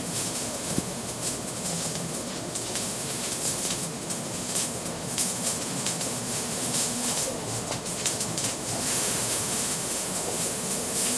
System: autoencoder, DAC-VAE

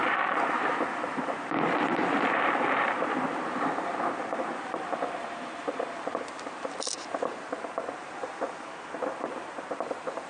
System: vocoder, BigVGAN v2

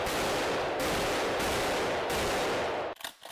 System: none